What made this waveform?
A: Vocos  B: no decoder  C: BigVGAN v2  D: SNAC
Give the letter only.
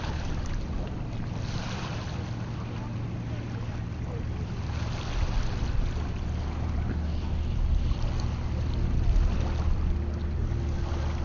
B